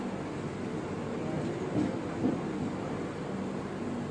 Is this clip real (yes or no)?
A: yes